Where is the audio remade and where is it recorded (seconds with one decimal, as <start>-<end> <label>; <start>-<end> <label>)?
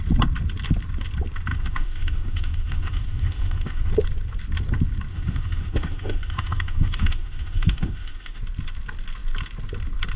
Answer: 0.0-1.5 recorded; 1.5-3.9 remade; 3.9-5.1 recorded; 5.1-8.4 remade; 8.4-10.2 recorded